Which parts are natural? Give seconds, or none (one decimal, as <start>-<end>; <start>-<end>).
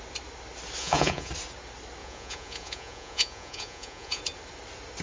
0.0-0.8; 1.3-2.0; 4.2-5.0